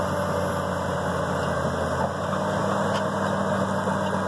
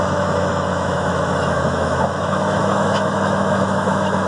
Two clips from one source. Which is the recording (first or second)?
first